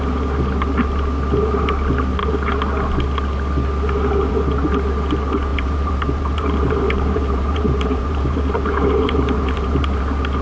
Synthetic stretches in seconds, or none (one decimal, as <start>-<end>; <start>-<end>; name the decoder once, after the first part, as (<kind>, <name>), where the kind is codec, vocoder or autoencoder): 5.5-10.0 (vocoder, BigVGAN v2)